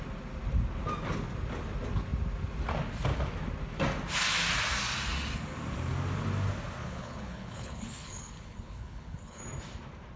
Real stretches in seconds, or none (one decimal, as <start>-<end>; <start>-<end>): 0.0-6.8; 9.4-10.2